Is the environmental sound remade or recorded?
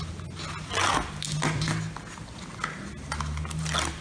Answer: recorded